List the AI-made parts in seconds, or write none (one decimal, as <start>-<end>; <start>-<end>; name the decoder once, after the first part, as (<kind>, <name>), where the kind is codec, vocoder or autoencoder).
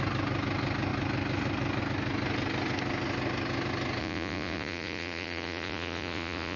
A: 4.0-6.6 (vocoder, Vocos)